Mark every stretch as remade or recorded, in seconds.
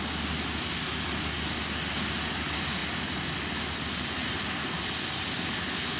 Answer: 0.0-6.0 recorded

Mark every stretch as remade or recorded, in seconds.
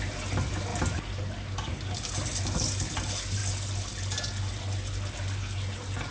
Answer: 0.0-6.1 recorded